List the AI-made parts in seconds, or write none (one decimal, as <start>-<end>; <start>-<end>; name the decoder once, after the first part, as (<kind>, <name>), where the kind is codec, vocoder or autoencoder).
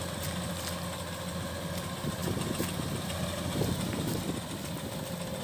none